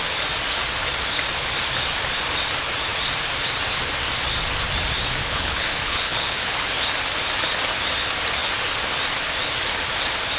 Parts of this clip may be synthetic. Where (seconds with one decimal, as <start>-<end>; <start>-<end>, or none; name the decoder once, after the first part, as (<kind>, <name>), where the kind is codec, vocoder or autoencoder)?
5.2-6.7 (codec, HILCodec)